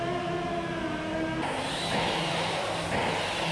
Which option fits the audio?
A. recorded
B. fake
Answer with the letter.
A